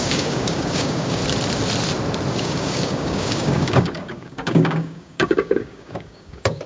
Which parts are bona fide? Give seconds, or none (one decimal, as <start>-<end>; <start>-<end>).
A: 1.2-2.3